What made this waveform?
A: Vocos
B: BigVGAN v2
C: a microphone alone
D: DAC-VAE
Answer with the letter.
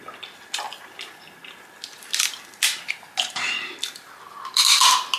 C